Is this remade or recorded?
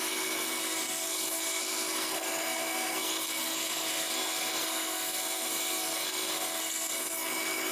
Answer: remade